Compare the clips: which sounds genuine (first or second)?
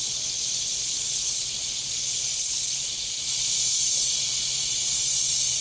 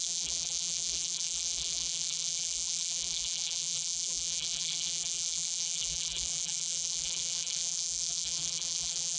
first